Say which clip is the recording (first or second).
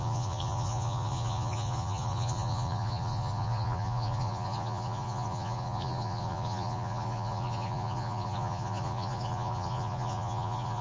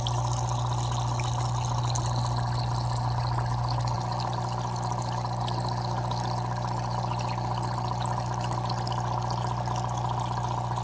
second